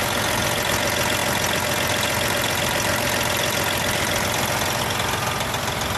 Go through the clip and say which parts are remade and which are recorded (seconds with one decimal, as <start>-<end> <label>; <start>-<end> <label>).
0.0-6.0 recorded